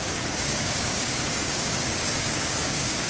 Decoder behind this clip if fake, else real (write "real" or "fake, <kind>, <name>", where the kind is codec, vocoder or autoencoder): fake, codec, DAC